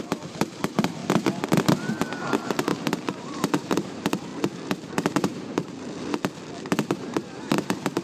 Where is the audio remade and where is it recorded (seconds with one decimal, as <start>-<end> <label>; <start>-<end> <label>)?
0.0-1.0 remade; 1.0-1.9 recorded; 1.9-4.3 remade; 4.3-4.9 recorded; 4.9-5.6 remade; 5.6-6.9 recorded; 6.9-8.0 remade